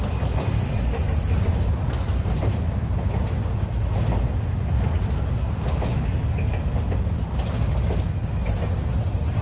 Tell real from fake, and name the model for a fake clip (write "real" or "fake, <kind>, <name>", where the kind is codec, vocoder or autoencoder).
real